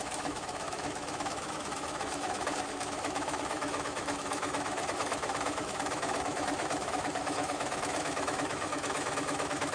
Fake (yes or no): yes